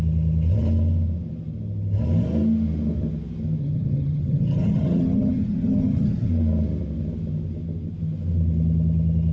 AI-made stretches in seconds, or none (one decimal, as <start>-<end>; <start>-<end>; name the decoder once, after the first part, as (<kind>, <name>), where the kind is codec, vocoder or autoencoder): 3.6-6.3 (vocoder, HiFi-GAN)